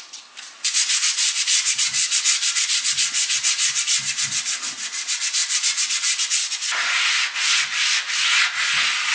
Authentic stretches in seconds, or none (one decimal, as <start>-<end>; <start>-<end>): 0.0-9.1